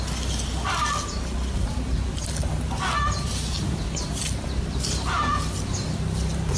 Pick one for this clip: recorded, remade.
recorded